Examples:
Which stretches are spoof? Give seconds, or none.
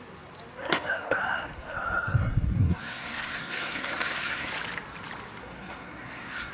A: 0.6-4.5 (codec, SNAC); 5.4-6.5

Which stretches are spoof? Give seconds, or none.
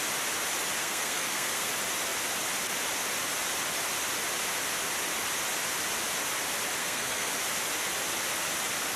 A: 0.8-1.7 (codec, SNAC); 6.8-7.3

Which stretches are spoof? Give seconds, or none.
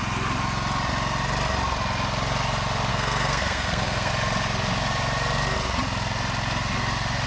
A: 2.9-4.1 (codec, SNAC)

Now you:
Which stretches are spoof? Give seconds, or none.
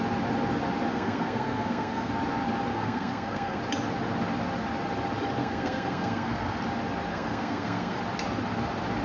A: 0.9-2.1 (codec, SNAC); 2.7-3.6; 5.4-6.6; 7.1-8.0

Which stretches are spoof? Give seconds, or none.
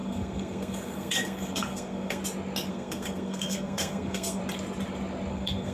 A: 0.0-2.2 (codec, SNAC); 2.7-4.4; 5.3-5.7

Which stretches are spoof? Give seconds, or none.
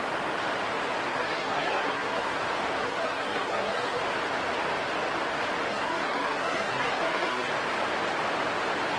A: 1.1-2.4 (codec, SNAC); 2.8-4.0; 5.7-7.5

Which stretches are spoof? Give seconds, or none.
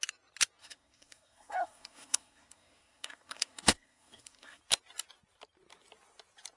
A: 0.6-4.6 (codec, SNAC)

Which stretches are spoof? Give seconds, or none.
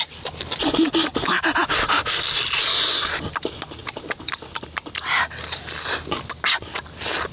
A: none